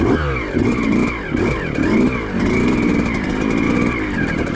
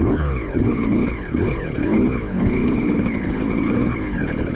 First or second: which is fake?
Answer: second